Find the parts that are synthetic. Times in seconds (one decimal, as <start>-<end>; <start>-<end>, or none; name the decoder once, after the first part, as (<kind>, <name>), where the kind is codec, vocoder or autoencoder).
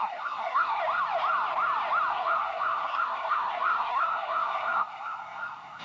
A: 0.0-0.8 (codec, SNAC); 2.1-5.8